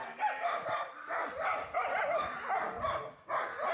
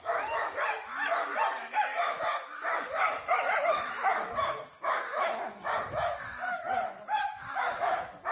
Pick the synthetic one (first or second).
second